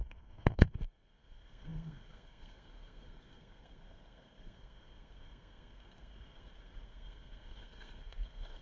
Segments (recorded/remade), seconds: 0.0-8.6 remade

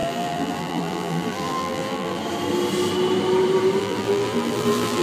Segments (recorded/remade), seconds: 0.0-2.2 remade; 2.2-3.8 recorded; 3.8-5.0 remade

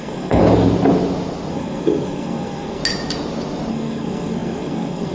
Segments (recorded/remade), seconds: 0.0-0.4 remade; 0.4-1.5 recorded; 1.5-2.8 remade; 2.8-3.7 recorded; 3.7-5.1 remade

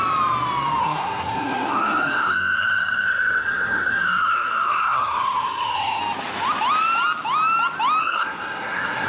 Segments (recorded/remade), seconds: 0.0-0.8 recorded; 0.8-6.0 remade; 6.0-8.0 recorded; 8.0-9.1 remade

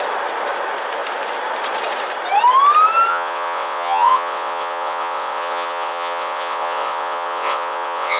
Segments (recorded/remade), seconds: 0.0-3.1 recorded; 3.1-8.2 remade

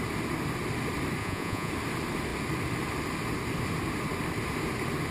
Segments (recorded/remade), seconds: 0.0-1.2 recorded; 1.2-1.7 remade; 1.7-5.1 recorded

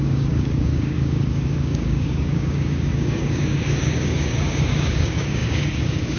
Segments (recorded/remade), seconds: 0.0-6.2 remade